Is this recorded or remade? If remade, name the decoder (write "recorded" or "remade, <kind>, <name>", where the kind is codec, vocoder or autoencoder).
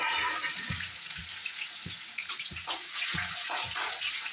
remade, vocoder, Vocos